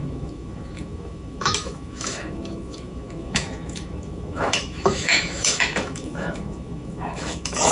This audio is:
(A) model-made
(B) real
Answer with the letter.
A